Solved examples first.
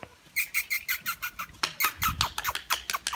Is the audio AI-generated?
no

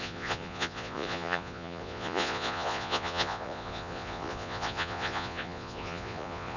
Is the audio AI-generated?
yes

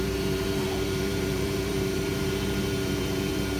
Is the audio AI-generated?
yes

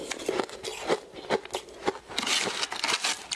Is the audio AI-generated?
no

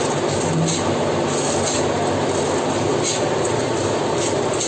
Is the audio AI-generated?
no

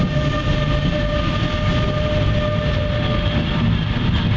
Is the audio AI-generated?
no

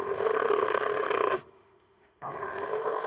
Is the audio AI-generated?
yes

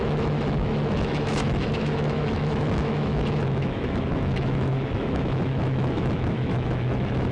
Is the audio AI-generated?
yes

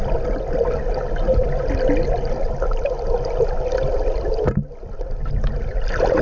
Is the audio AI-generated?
no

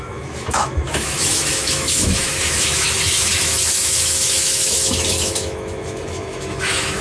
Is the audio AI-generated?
yes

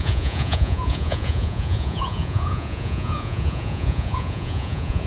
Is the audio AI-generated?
yes